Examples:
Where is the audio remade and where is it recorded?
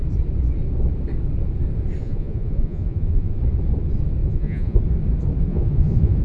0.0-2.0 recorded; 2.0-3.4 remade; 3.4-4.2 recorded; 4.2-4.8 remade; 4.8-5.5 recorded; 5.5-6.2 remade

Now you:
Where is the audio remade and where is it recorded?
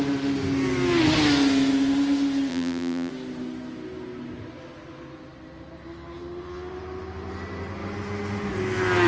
0.0-2.5 recorded; 2.5-3.1 remade; 3.1-9.1 recorded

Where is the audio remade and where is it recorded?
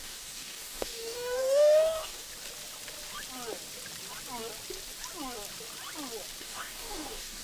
0.0-2.3 remade; 2.3-6.4 recorded; 6.4-7.4 remade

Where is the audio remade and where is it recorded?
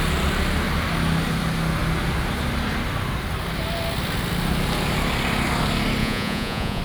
0.0-6.0 recorded; 6.0-6.8 remade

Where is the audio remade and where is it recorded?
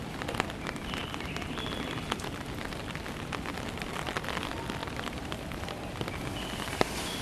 0.0-1.0 recorded; 1.0-3.0 remade; 3.0-4.8 recorded; 4.8-5.3 remade; 5.3-7.2 recorded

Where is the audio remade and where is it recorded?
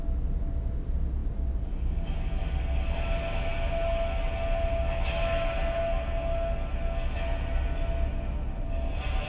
0.0-9.3 recorded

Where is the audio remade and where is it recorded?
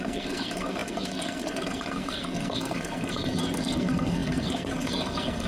0.0-5.5 remade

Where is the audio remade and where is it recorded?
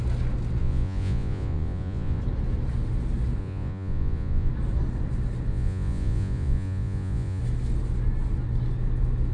0.0-0.6 recorded; 0.6-2.2 remade; 2.2-3.4 recorded; 3.4-4.5 remade; 4.5-5.5 recorded; 5.5-7.4 remade; 7.4-9.3 recorded